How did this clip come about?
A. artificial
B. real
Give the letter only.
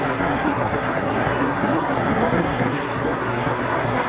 A